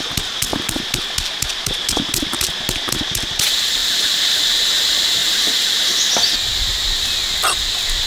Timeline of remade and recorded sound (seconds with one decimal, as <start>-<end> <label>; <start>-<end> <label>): 0.0-8.1 recorded